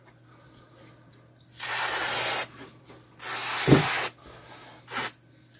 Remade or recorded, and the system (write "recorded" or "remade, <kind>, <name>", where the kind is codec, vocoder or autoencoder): recorded